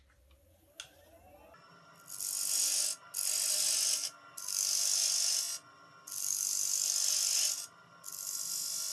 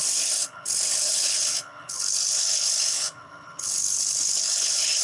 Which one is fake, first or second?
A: second